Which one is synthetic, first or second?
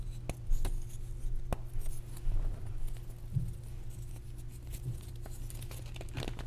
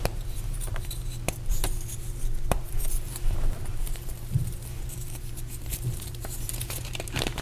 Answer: second